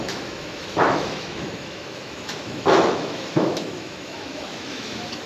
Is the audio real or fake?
fake